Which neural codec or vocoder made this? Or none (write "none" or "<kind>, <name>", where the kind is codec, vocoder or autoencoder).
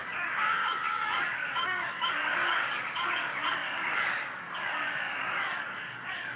codec, DAC